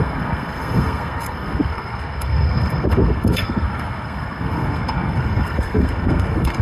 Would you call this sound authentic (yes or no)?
no